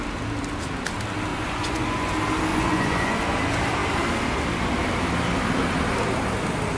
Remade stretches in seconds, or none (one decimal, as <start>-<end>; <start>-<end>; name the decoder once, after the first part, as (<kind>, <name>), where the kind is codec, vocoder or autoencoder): 1.3-2.1 (vocoder, Vocos); 2.5-3.2